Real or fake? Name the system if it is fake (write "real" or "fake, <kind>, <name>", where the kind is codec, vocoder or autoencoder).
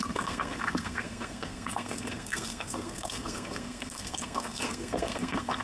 fake, codec, SNAC